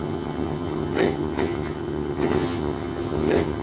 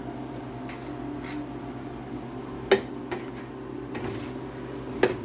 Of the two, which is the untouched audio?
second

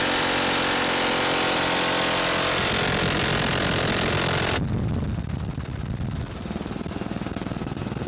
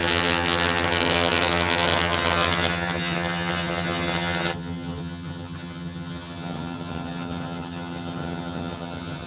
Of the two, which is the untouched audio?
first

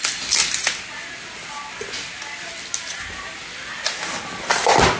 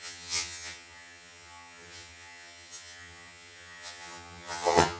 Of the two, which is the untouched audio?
first